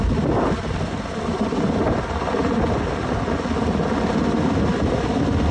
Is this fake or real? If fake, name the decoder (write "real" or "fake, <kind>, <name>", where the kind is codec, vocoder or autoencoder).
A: real